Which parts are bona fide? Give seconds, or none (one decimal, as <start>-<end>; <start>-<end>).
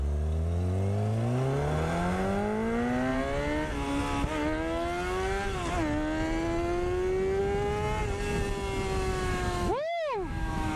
0.0-9.1